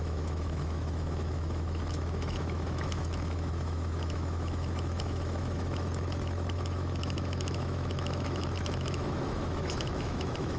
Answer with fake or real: fake